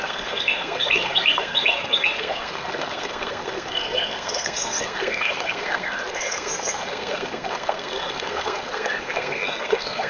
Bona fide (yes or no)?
no